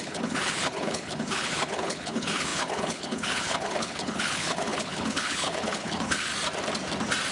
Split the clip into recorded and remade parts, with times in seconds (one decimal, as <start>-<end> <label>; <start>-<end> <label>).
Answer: 0.0-6.3 remade; 6.3-7.3 recorded